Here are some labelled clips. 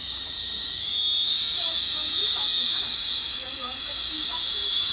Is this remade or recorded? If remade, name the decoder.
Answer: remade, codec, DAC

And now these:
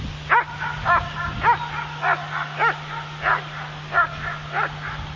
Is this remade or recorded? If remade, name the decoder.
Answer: recorded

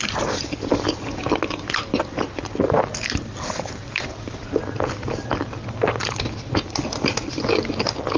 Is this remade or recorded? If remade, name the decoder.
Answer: recorded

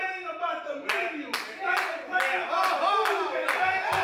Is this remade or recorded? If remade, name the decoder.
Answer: recorded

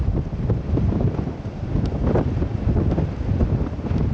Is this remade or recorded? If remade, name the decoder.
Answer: recorded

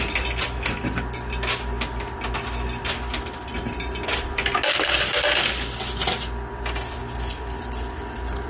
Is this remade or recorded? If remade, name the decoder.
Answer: recorded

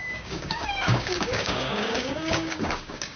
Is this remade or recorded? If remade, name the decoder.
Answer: remade, codec, DAC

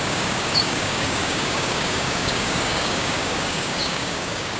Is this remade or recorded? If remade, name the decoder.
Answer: remade, codec, DAC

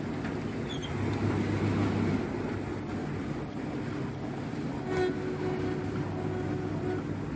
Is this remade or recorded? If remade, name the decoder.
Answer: recorded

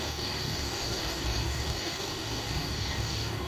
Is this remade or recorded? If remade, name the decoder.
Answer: remade, codec, DAC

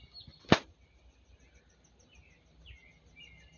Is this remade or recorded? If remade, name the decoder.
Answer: recorded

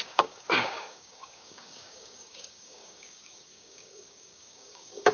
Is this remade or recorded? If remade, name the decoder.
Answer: remade, codec, DAC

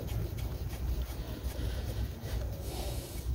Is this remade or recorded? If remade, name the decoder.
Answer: recorded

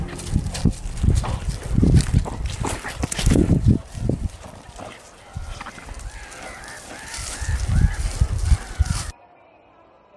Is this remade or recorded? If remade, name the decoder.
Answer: recorded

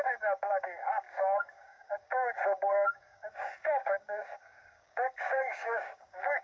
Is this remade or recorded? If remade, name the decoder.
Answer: remade, codec, DAC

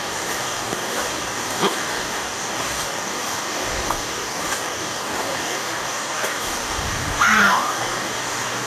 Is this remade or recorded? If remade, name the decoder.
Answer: remade, codec, DAC